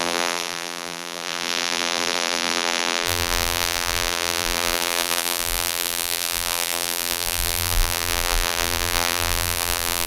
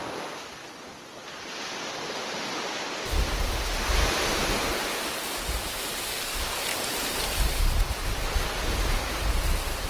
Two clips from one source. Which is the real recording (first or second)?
second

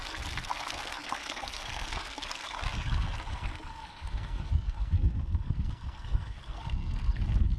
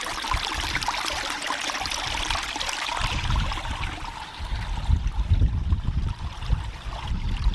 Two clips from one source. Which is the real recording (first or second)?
second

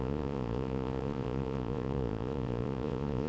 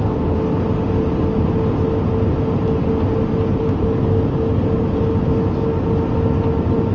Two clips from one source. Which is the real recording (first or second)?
second